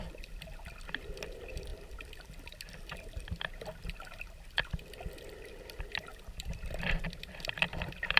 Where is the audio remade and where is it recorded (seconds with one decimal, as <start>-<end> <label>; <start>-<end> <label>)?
0.0-8.2 remade